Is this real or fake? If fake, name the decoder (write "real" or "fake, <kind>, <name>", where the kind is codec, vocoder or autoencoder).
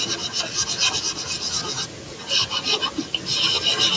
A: real